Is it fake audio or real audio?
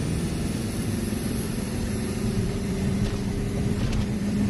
fake